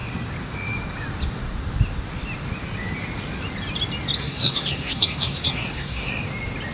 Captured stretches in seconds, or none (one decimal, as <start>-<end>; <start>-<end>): 0.0-4.2; 6.1-6.7